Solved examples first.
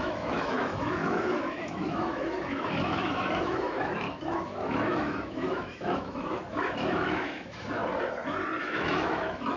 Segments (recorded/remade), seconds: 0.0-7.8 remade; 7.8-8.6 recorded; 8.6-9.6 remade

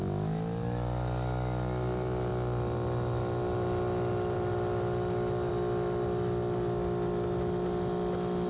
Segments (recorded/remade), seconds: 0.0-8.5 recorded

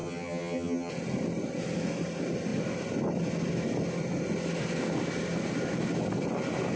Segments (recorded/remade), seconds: 0.0-0.9 remade; 0.9-6.8 recorded

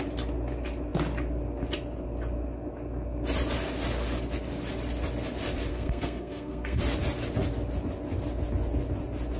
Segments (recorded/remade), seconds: 0.0-5.7 recorded; 5.7-6.8 remade; 6.8-9.4 recorded

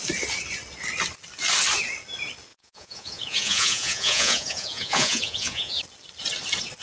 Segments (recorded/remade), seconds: 0.0-2.5 recorded; 2.5-5.7 remade; 5.7-6.8 recorded